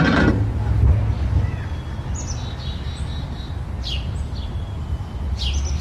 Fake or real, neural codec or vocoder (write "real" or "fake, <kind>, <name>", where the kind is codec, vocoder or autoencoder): real